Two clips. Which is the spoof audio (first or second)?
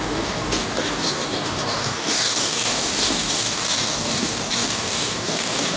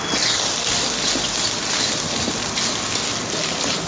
first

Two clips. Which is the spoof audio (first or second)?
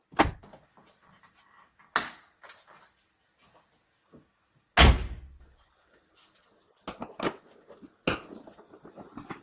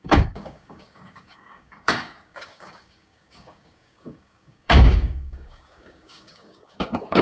second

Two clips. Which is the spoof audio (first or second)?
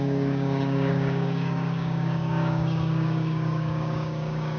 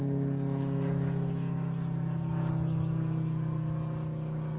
first